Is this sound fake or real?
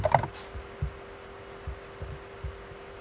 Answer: real